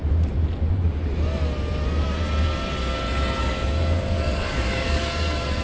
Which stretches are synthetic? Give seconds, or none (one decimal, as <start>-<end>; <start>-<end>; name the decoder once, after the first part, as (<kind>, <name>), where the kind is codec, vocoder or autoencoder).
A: 3.4-5.6 (codec, DAC)